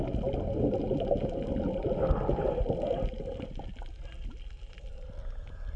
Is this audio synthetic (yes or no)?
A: no